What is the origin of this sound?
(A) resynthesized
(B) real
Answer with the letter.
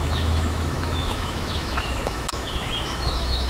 A